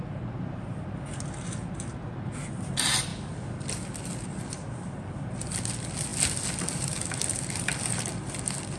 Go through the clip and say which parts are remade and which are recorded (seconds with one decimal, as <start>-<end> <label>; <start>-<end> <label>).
0.0-8.8 recorded